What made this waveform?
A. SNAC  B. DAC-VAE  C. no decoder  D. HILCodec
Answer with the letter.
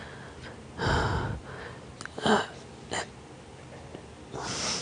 C